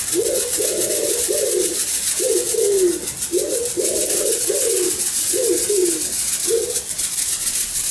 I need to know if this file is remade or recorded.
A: recorded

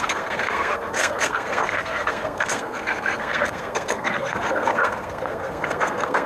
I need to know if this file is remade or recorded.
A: remade